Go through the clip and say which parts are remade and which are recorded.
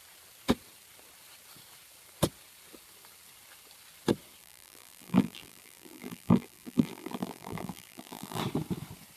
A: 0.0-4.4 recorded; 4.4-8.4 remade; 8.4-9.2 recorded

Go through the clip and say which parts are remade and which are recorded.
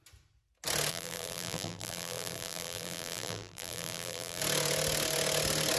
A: 0.0-0.9 recorded; 0.9-4.4 remade; 4.4-5.8 recorded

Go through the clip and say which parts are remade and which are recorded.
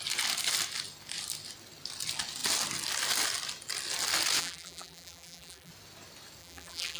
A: 0.0-4.4 recorded; 4.4-5.7 remade; 5.7-6.4 recorded; 6.4-7.0 remade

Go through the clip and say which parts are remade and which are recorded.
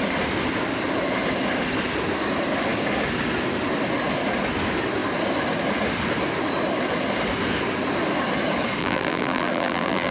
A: 0.0-8.8 recorded; 8.8-10.1 remade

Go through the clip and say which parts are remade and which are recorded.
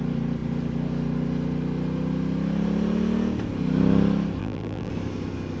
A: 0.0-4.4 recorded; 4.4-4.9 remade; 4.9-5.6 recorded